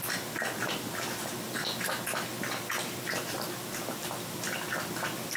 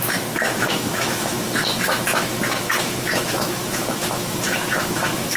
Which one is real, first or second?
first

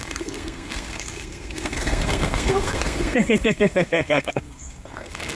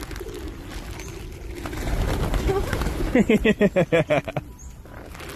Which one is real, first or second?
second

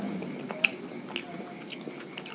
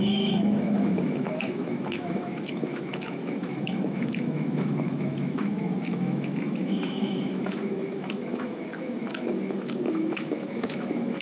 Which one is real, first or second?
first